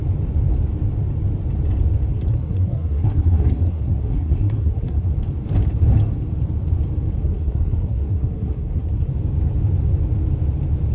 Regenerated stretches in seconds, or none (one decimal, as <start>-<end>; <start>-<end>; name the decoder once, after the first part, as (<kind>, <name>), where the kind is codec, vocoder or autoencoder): 2.1-5.1 (codec, SNAC); 7.2-9.1